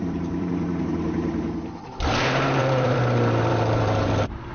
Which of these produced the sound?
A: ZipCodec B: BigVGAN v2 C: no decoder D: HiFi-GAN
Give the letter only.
B